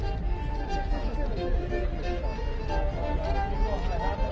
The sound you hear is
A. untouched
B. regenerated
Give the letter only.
A